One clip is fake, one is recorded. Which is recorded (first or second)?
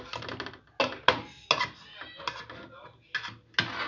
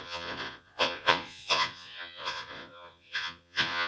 first